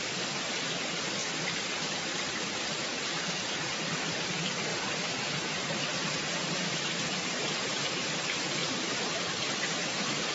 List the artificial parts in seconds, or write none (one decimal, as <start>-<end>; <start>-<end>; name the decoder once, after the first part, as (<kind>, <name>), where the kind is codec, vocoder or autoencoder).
4.7-8.2 (vocoder, BigVGAN v2); 8.6-9.5